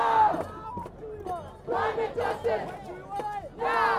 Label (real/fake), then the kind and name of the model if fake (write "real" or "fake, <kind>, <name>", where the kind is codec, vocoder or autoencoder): real